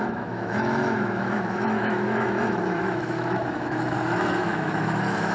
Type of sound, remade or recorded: remade